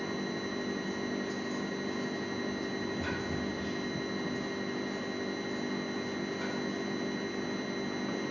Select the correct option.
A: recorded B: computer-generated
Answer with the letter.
A